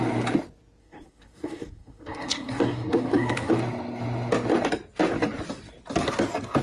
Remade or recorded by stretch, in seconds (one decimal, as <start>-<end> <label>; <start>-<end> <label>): 0.0-0.8 recorded; 0.8-3.5 remade; 3.5-6.6 recorded